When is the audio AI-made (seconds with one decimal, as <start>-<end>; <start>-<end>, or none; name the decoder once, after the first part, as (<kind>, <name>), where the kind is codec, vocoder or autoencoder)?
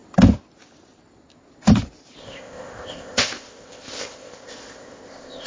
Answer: 2.2-5.5 (codec, ZipCodec)